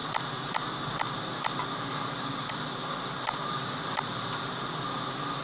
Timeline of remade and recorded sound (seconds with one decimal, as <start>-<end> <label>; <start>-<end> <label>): 0.0-5.4 recorded